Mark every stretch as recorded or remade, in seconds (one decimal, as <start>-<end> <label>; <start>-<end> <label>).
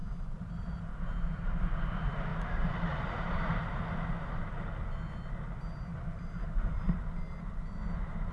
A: 0.0-0.9 remade; 0.9-2.3 recorded; 2.3-3.8 remade; 3.8-5.9 recorded; 5.9-7.2 remade; 7.2-8.3 recorded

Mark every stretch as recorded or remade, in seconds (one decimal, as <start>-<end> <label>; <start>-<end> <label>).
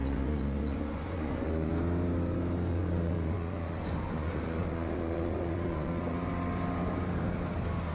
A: 0.0-1.7 remade; 1.7-2.7 recorded; 2.7-6.3 remade; 6.3-7.9 recorded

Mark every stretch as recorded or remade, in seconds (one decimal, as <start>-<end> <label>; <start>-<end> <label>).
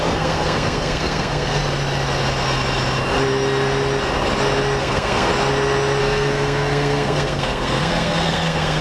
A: 0.0-1.6 remade; 1.6-4.8 recorded; 4.8-5.3 remade; 5.3-6.0 recorded; 6.0-8.8 remade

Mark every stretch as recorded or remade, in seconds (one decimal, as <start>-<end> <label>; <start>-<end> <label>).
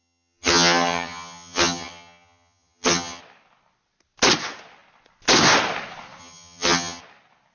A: 0.0-3.2 remade; 3.2-6.2 recorded; 6.2-7.0 remade; 7.0-7.5 recorded